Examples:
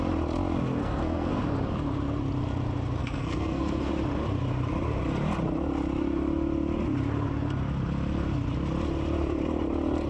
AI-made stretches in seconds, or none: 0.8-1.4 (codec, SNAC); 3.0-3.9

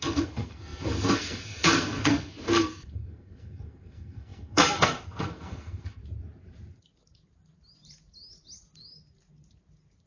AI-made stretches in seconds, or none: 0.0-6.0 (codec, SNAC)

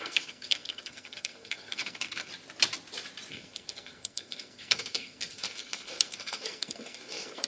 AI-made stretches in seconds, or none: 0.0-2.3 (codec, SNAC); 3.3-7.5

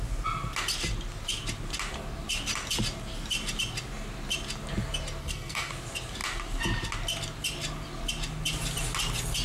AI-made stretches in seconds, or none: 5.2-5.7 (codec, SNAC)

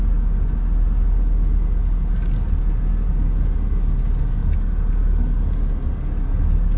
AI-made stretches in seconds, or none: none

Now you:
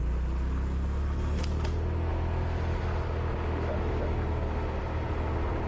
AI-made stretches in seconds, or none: none

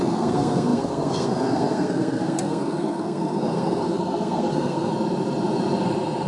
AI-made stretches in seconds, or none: 0.0-4.9 (codec, SNAC)